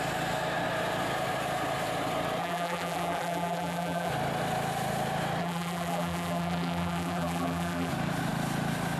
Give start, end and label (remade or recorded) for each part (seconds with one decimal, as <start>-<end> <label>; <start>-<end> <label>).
0.0-2.4 recorded; 2.4-4.1 remade; 4.1-5.4 recorded; 5.4-7.9 remade; 7.9-9.0 recorded